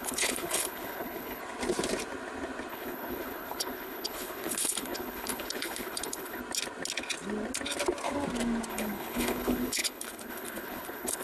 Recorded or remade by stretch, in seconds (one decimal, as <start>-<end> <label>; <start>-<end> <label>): 0.0-1.4 remade; 1.4-2.7 recorded; 2.7-6.4 remade; 6.4-8.7 recorded; 8.7-11.2 remade